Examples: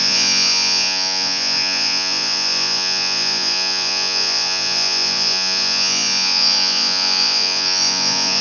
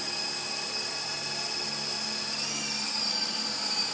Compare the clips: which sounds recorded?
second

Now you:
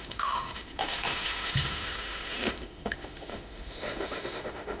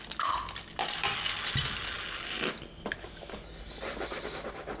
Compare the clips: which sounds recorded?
second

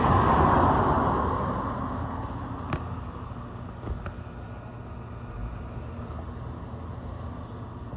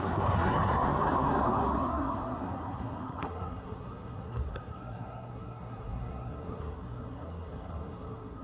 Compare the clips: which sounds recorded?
first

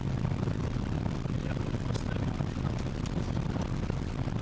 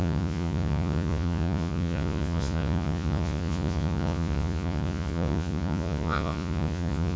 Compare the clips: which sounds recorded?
first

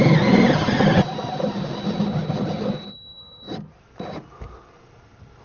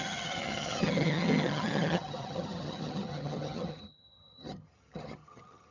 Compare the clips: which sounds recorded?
first